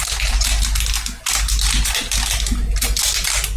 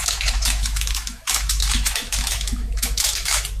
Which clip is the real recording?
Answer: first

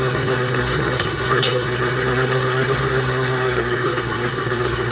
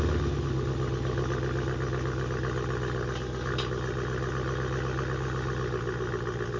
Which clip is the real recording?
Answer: second